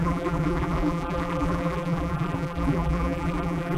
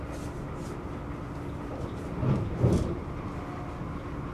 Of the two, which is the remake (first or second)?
first